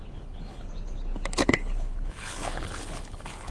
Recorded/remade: remade